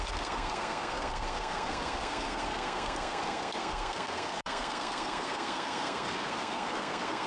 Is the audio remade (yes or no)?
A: yes